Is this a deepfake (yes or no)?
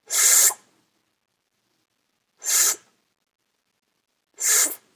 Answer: no